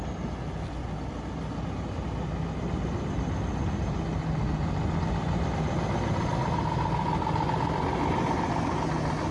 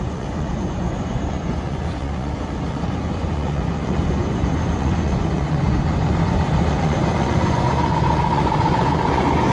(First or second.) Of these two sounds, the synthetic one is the second